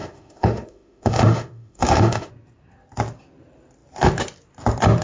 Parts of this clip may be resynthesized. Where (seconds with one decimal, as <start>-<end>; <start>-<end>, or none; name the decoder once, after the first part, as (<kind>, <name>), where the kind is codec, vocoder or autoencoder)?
0.0-2.3 (autoencoder, DAC-VAE)